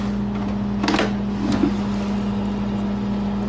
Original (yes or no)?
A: yes